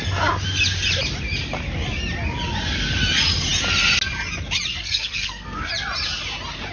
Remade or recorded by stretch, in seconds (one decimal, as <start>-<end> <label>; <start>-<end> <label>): 0.0-4.7 recorded; 4.7-5.7 remade; 5.7-6.7 recorded